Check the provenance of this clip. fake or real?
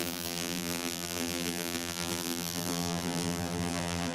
fake